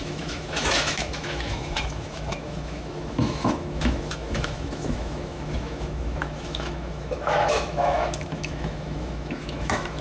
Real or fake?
fake